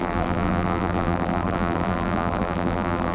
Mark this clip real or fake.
fake